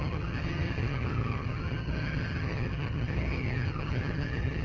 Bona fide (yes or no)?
no